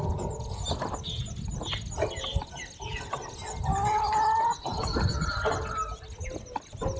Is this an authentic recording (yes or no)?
yes